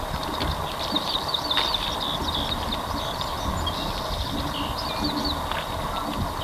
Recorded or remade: recorded